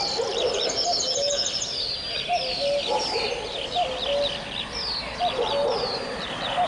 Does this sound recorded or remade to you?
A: recorded